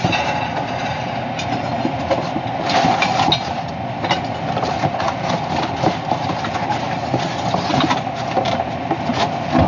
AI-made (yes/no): no